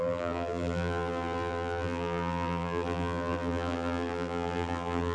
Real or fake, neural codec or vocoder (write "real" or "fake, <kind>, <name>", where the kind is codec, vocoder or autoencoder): fake, vocoder, BigVGAN v2